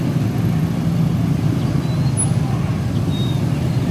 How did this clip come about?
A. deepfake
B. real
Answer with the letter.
B